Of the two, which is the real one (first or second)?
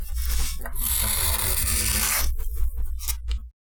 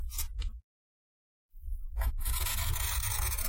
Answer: first